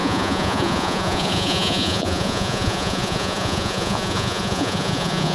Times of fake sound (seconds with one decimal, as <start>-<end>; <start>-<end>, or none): 0.0-5.3